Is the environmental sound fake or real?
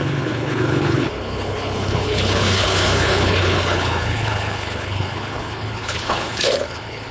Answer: fake